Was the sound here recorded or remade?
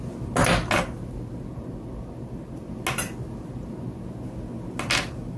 recorded